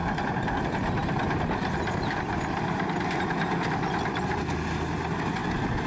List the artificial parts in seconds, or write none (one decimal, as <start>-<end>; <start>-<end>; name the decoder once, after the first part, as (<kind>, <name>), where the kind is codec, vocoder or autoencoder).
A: none